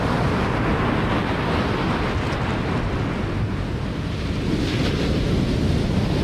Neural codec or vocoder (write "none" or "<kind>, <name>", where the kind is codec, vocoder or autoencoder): none